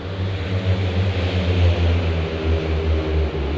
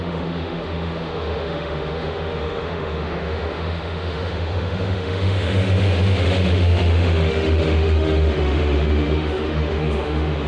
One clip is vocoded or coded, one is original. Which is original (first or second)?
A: first